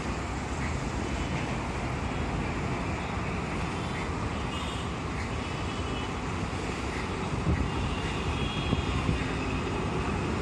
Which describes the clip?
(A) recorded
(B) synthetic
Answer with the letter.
A